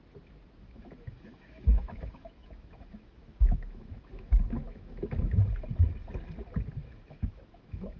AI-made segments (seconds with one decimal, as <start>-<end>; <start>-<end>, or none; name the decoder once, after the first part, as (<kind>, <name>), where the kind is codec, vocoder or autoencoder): 0.6-5.4 (autoencoder, DAC-VAE); 6.8-8.0